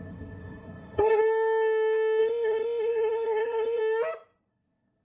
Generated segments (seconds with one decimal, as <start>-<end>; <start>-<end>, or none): 0.0-1.2; 2.2-3.8; 4.5-5.0